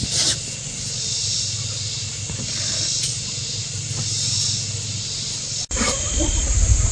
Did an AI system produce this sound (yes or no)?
no